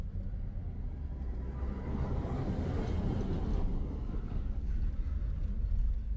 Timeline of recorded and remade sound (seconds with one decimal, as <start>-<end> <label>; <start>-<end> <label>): 0.0-3.5 recorded; 3.5-4.8 remade; 4.8-6.2 recorded